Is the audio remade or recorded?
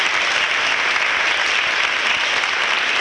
recorded